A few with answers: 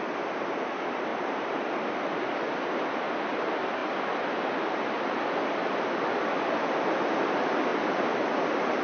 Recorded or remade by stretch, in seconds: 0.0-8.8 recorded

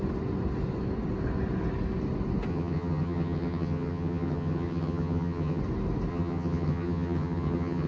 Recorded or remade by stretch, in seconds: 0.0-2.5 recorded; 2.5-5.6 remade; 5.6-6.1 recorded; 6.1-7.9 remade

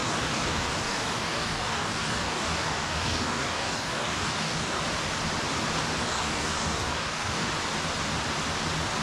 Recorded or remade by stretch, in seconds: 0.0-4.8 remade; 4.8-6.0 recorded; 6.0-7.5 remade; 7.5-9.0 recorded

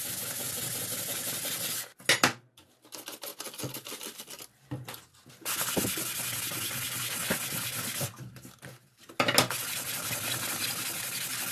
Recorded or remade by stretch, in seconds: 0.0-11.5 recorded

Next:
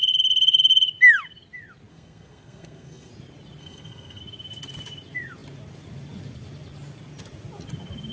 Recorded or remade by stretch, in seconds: 0.0-1.9 recorded; 1.9-3.1 remade; 3.1-3.6 recorded; 3.6-4.2 remade; 4.2-8.1 recorded

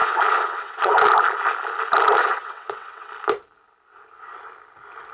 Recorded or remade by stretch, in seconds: 0.0-0.9 remade; 0.9-2.2 recorded; 2.2-3.1 remade; 3.1-5.1 recorded

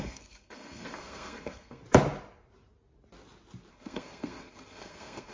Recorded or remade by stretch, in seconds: 0.0-1.8 remade; 1.8-3.7 recorded; 3.7-5.3 remade